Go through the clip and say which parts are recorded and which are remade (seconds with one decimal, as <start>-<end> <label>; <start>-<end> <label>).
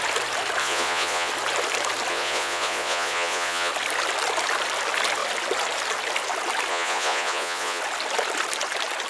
0.0-0.6 recorded; 0.6-1.3 remade; 1.3-2.1 recorded; 2.1-3.7 remade; 3.7-6.7 recorded; 6.7-7.8 remade; 7.8-9.1 recorded